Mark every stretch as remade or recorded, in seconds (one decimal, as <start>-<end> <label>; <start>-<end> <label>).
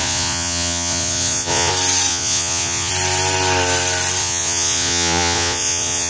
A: 0.0-1.7 remade; 1.7-2.1 recorded; 2.1-2.9 remade; 2.9-4.2 recorded; 4.2-6.1 remade